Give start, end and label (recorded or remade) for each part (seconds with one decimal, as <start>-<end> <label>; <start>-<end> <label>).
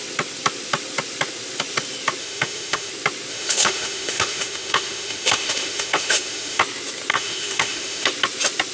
0.0-2.2 recorded; 2.2-2.9 remade; 2.9-3.3 recorded; 3.3-6.6 remade; 6.6-7.1 recorded; 7.1-8.1 remade; 8.1-8.7 recorded